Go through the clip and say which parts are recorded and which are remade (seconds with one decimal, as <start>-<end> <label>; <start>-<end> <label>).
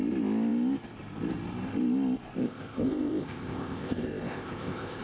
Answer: 0.0-2.4 recorded; 2.4-5.0 remade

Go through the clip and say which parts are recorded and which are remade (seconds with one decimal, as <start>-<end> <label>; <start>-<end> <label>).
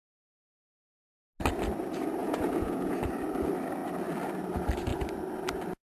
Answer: 0.0-2.2 recorded; 2.2-3.0 remade; 3.0-6.0 recorded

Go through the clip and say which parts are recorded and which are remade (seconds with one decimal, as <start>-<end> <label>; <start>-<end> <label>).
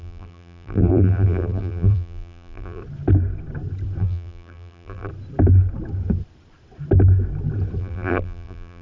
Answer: 0.0-2.8 remade; 2.8-4.0 recorded; 4.0-5.1 remade; 5.1-7.8 recorded; 7.8-8.8 remade